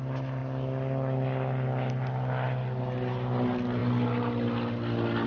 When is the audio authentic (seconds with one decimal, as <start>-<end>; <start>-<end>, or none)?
0.0-5.3